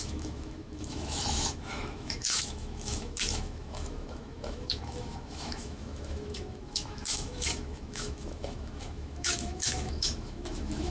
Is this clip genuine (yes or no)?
no